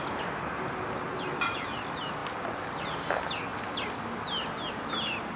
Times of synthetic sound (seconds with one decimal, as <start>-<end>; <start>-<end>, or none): none

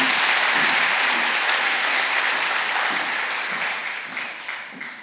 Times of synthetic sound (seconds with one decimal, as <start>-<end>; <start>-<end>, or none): 1.6-2.2

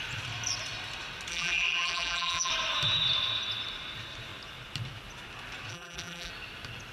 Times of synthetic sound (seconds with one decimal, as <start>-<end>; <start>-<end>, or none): 1.3-2.5; 5.7-6.3

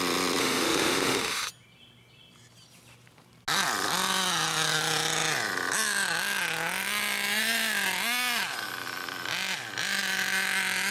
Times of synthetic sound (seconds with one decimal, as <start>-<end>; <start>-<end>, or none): 0.4-1.5